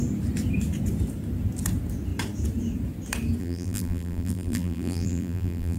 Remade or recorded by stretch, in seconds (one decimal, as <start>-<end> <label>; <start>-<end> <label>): 0.0-3.4 recorded; 3.4-5.8 remade